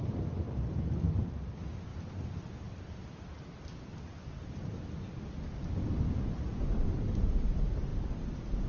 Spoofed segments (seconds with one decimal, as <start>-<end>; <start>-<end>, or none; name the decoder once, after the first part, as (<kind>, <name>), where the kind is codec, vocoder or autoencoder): none